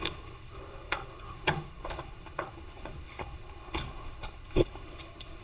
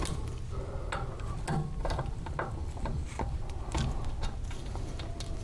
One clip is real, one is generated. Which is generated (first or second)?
first